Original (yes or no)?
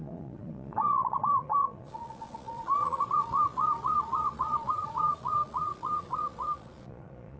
no